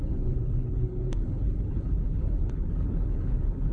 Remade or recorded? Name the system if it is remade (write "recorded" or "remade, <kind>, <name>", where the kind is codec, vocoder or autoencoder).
remade, codec, HILCodec